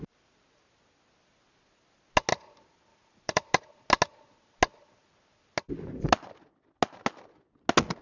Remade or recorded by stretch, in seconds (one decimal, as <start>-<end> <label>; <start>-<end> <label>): 0.0-2.9 recorded; 2.9-3.6 remade; 3.6-8.0 recorded